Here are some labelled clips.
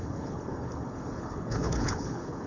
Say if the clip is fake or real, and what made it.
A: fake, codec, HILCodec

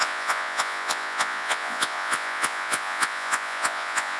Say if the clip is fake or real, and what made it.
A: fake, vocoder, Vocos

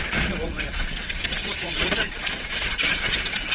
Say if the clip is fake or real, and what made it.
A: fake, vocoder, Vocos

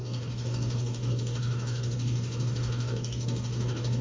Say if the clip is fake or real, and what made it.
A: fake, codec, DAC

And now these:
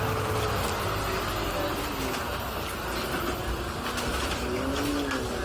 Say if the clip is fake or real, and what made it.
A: real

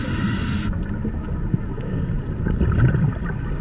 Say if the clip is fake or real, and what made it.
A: real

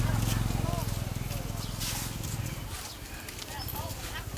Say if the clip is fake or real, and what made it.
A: real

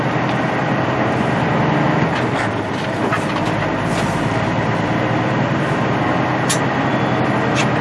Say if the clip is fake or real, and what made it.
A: real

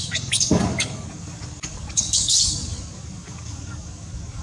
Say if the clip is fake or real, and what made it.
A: fake, codec, DAC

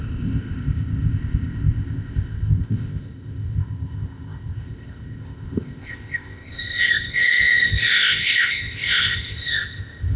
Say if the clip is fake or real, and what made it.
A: fake, codec, ZipCodec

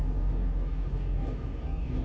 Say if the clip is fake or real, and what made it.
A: fake, codec, DAC